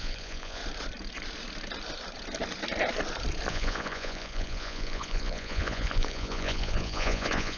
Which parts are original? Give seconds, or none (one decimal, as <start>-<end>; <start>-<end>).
0.6-3.5